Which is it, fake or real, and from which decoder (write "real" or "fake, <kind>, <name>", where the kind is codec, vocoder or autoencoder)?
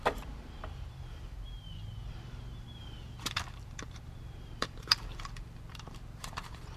fake, vocoder, BigVGAN v2